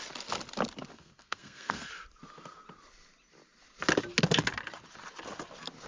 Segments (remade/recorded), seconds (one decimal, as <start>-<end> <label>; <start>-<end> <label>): 0.0-0.9 recorded; 0.9-1.9 remade; 1.9-5.9 recorded